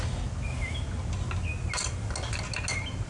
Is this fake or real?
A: real